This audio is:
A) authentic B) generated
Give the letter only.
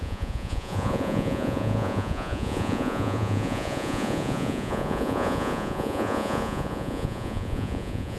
B